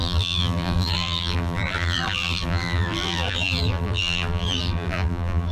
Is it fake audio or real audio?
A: fake